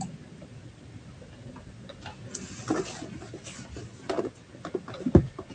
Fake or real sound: real